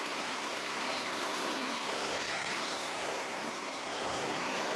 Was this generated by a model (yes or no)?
yes